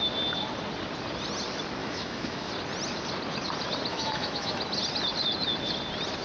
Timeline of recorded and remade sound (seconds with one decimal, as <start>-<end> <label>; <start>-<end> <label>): 0.0-1.8 recorded; 1.8-2.5 remade; 2.5-3.9 recorded; 3.9-4.6 remade; 4.6-6.2 recorded

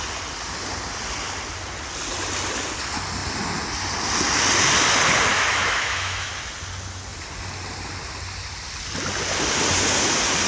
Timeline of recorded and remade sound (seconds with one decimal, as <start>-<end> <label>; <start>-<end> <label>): 0.0-5.3 recorded; 5.3-6.3 remade; 6.3-10.5 recorded

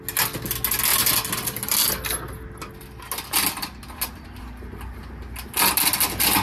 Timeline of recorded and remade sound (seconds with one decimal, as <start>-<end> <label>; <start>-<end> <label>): 0.0-6.4 recorded